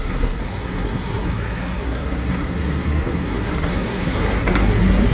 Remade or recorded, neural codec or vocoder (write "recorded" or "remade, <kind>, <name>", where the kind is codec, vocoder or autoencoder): remade, codec, SNAC